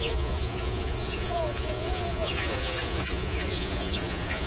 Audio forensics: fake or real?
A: fake